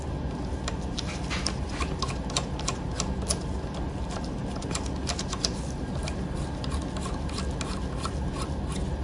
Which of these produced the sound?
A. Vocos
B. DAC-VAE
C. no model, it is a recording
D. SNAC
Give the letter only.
C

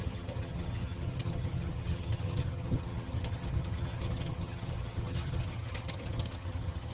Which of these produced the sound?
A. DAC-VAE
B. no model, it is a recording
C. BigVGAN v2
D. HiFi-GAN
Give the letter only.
D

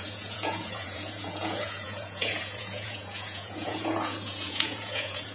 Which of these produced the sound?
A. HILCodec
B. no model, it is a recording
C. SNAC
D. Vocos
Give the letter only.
D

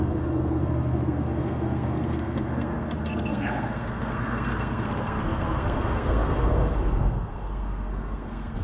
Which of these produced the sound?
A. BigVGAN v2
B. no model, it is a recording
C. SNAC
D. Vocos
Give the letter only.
C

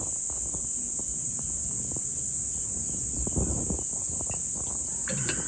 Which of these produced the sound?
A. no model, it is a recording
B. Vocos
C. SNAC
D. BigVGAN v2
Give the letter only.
A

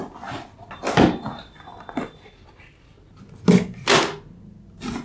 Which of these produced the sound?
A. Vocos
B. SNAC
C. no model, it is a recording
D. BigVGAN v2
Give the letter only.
C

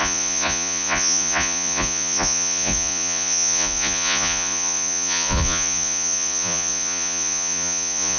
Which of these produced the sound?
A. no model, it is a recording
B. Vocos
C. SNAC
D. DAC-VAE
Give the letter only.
B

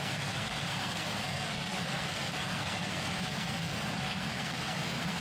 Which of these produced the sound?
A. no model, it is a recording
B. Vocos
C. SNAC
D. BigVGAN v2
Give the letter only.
C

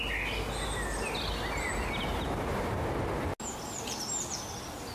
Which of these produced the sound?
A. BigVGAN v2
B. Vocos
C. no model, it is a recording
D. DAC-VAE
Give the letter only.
C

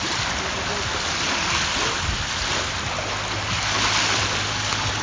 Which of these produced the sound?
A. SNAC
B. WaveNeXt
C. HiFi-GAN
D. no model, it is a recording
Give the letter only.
D